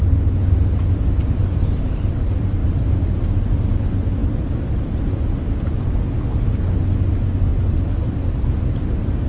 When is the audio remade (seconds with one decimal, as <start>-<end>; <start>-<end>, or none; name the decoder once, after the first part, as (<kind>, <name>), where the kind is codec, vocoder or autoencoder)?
1.4-2.1 (vocoder, BigVGAN v2); 2.6-3.3; 7.5-9.3